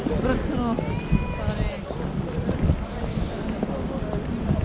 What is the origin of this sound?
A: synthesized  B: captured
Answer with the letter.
B